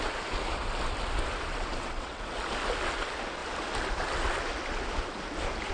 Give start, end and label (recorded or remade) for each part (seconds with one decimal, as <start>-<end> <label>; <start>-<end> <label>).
0.0-1.5 recorded; 1.5-2.4 remade; 2.4-5.7 recorded